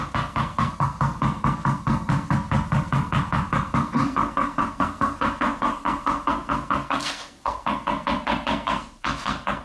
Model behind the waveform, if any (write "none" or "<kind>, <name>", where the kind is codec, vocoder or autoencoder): codec, SNAC